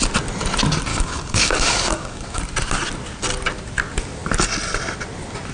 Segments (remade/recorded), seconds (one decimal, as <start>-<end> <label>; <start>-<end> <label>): 0.0-0.9 recorded; 0.9-2.4 remade; 2.4-5.5 recorded